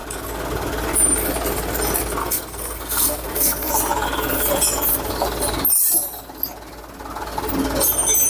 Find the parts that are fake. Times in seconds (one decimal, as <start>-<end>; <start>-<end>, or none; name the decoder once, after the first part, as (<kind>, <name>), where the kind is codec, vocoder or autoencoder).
2.2-3.7 (codec, SNAC)